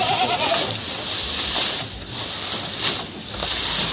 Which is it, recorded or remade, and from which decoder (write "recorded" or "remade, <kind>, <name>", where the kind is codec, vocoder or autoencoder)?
recorded